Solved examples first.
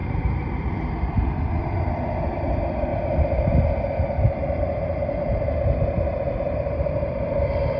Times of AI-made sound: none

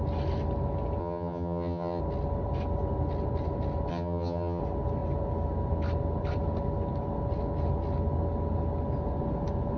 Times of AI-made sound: 1.0-2.0 (vocoder, HiFi-GAN); 3.9-4.6

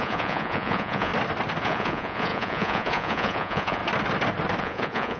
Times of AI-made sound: 0.0-1.1 (vocoder, Vocos); 1.6-3.8; 4.6-5.2

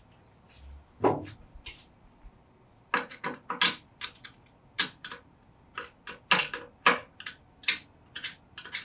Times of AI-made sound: none

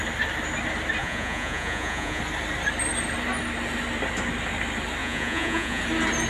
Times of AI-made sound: 1.0-2.2 (vocoder, Vocos); 5.0-5.8

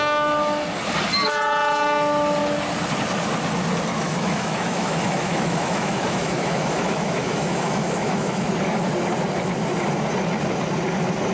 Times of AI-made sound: 3.9-8.5 (autoencoder, DAC-VAE)

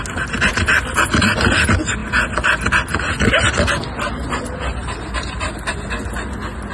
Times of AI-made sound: 0.5-1.5 (vocoder, BigVGAN v2)